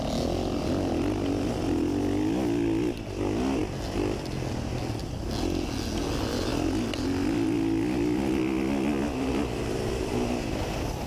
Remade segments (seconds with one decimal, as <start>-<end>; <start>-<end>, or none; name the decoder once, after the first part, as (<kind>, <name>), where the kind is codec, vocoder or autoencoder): none